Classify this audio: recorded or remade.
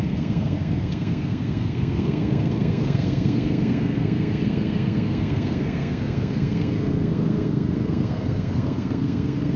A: remade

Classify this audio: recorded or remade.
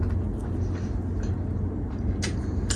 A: recorded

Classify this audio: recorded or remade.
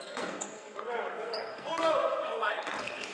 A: remade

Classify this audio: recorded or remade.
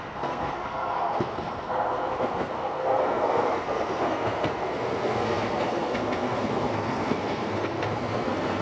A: remade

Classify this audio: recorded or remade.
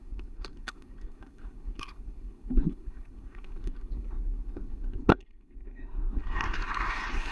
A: remade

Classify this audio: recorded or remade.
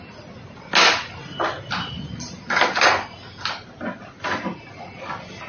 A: recorded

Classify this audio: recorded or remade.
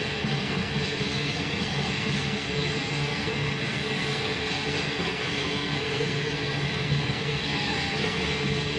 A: remade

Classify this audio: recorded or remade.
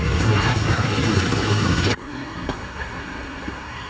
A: remade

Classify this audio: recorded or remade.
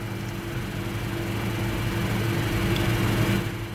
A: recorded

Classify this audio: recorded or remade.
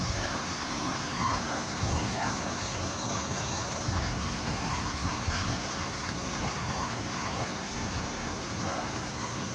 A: remade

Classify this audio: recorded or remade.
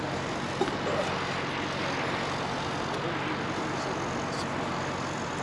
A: recorded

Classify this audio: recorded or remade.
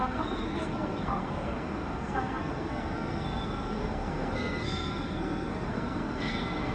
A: remade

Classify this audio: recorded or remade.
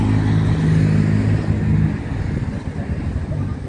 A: recorded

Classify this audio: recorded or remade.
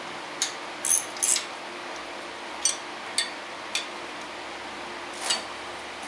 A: recorded